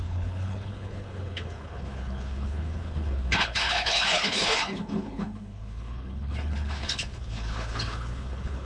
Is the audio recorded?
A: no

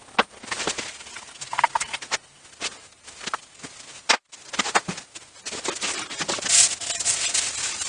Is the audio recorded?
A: yes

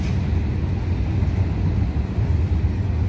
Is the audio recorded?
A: yes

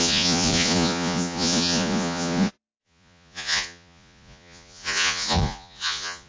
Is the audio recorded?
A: no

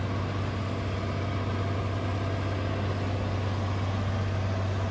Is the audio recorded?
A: yes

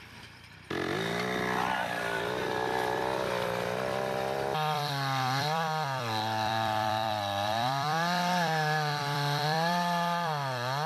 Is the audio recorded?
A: no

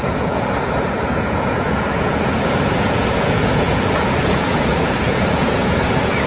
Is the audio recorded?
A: no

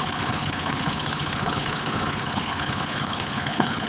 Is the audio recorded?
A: no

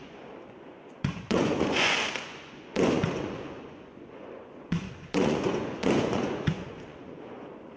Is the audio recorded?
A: no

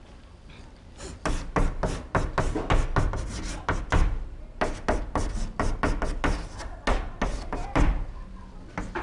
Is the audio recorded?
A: yes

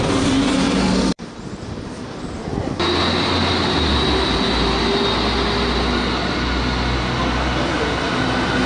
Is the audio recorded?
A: yes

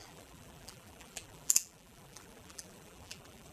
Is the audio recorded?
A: no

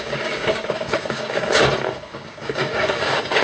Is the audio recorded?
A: no